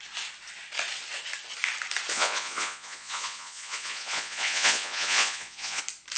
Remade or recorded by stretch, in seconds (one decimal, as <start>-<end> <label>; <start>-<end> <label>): 0.0-2.1 recorded; 2.1-5.8 remade; 5.8-6.2 recorded